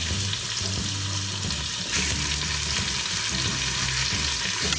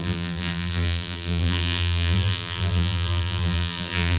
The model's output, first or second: second